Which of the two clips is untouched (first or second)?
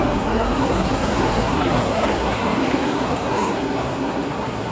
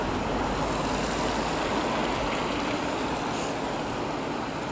second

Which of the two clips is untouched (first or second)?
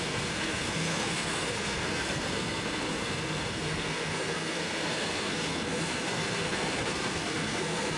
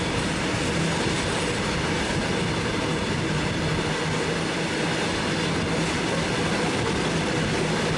second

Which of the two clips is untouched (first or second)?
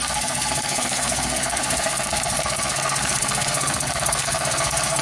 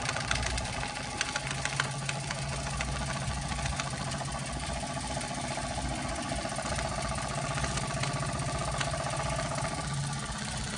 second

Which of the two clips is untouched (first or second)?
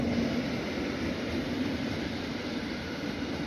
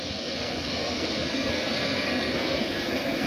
first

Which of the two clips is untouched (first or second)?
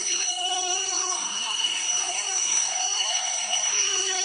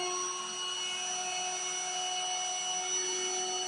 second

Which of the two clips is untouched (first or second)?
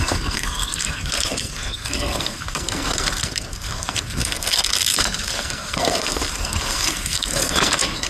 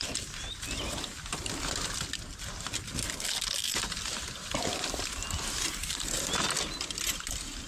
second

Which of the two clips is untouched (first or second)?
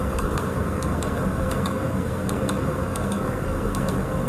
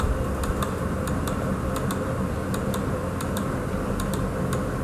second